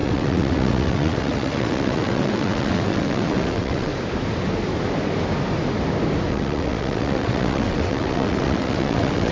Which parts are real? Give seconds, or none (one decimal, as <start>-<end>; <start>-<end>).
3.9-6.3